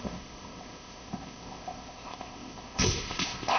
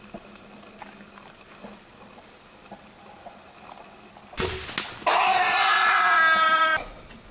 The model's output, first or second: first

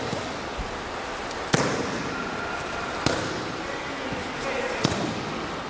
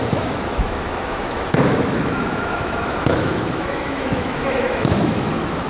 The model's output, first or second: second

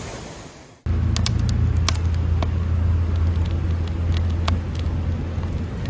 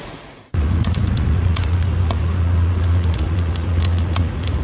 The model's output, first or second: second